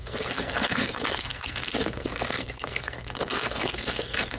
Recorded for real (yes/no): no